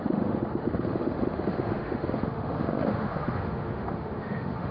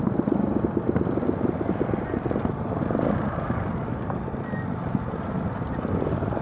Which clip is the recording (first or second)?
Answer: second